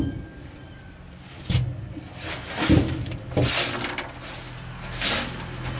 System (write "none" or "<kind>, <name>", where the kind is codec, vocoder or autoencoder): none